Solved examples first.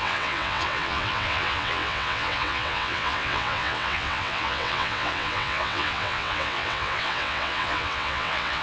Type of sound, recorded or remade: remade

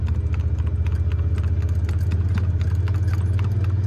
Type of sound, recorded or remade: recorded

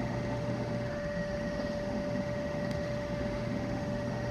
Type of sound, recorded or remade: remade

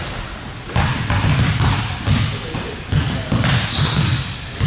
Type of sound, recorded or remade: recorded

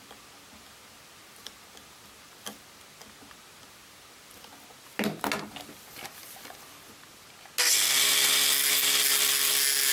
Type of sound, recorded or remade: recorded